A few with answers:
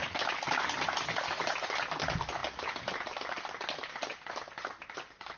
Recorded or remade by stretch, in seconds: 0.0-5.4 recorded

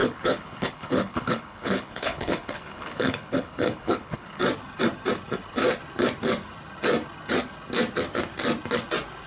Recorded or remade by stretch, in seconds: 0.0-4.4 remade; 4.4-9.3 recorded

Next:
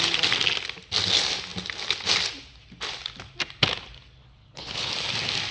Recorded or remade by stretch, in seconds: 0.0-4.2 recorded; 4.2-4.9 remade; 4.9-5.5 recorded

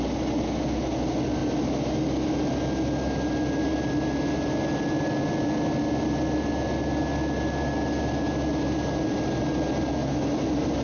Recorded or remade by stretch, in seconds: 0.0-10.8 recorded

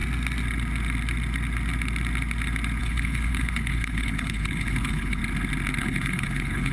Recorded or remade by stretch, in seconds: 0.0-2.8 recorded; 2.8-5.2 remade; 5.2-5.8 recorded; 5.8-6.7 remade

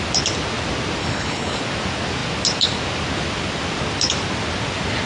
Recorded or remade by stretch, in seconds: 0.0-1.0 recorded; 1.0-1.6 remade; 1.6-5.1 recorded